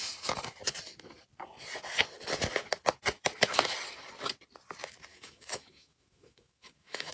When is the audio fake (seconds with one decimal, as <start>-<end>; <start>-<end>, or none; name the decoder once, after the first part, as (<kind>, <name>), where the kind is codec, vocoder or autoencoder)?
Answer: 5.1-7.1 (autoencoder, DAC-VAE)